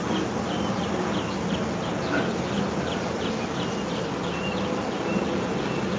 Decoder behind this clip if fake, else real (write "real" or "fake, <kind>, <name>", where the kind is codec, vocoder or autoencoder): real